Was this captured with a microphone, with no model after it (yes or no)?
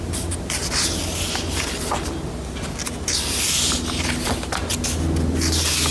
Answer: yes